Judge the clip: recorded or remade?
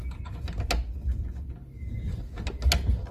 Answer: recorded